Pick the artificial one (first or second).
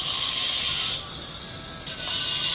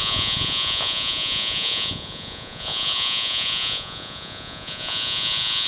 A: second